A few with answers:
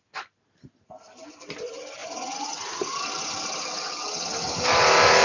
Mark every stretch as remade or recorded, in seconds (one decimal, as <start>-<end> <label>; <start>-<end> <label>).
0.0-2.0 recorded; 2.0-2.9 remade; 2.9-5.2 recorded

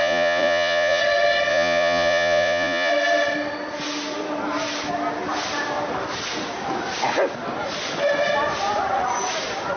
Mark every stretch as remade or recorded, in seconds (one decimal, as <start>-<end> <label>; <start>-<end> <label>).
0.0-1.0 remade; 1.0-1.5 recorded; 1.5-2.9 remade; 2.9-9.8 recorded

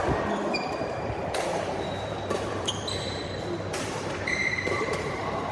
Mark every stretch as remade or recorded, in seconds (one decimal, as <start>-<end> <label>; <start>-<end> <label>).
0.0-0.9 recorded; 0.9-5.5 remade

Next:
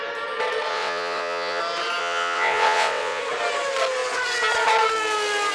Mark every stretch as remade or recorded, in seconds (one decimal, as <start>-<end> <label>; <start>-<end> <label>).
0.0-0.7 recorded; 0.7-1.6 remade; 1.6-2.0 recorded; 2.0-3.2 remade; 3.2-5.5 recorded

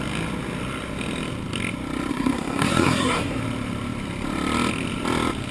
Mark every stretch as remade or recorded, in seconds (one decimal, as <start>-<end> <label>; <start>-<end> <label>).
0.0-2.1 recorded; 2.1-3.4 remade; 3.4-5.5 recorded

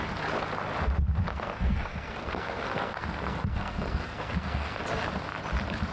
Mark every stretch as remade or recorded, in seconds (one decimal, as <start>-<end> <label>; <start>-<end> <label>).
0.0-1.3 recorded; 1.3-4.8 remade; 4.8-5.9 recorded

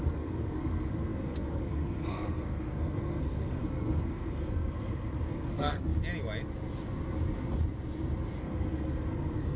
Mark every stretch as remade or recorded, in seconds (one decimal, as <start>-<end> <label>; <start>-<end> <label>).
0.0-5.9 remade; 5.9-8.4 recorded; 8.4-9.6 remade